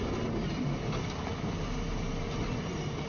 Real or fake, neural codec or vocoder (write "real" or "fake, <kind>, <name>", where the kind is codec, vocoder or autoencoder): real